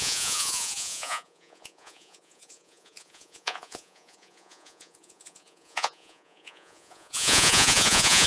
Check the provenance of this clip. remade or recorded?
remade